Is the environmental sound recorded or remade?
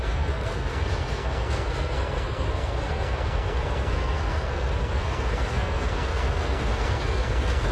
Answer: remade